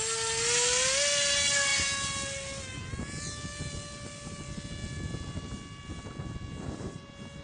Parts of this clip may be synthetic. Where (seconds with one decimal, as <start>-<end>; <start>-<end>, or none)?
none